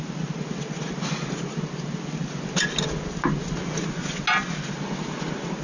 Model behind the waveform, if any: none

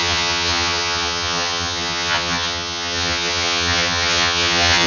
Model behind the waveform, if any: vocoder, HiFi-GAN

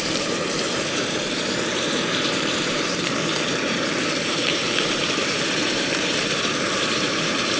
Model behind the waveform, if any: vocoder, BigVGAN v2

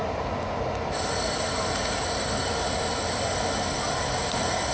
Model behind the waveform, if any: none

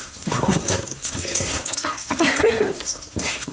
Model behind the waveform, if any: codec, SNAC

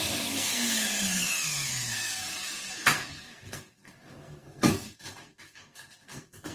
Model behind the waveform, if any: codec, SNAC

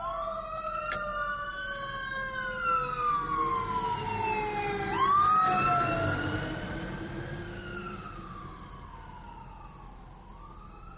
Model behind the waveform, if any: none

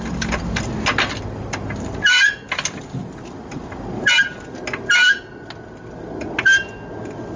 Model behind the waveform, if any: none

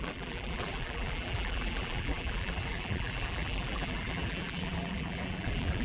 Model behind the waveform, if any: vocoder, BigVGAN v2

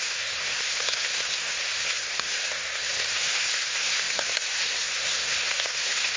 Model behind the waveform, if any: codec, SNAC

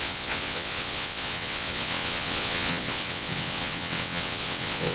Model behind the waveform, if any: vocoder, WaveNeXt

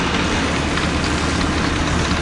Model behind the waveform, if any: none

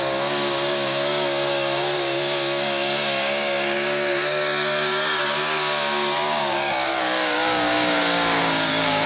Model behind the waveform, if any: codec, DAC